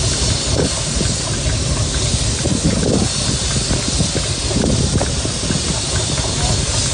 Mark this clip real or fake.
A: real